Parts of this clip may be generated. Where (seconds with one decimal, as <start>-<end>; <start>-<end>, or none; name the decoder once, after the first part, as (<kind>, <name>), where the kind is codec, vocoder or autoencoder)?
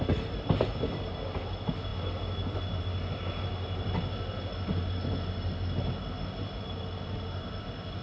none